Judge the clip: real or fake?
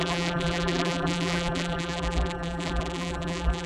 fake